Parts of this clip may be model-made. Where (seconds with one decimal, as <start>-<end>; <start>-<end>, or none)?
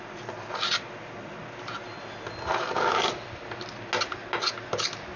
none